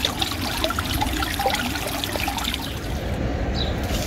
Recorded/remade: recorded